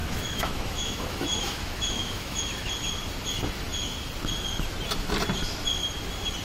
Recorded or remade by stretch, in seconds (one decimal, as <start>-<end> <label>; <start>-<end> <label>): 0.0-2.7 remade; 2.7-6.4 recorded